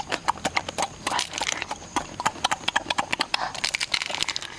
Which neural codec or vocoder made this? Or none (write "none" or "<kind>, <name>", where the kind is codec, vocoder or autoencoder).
vocoder, BigVGAN v2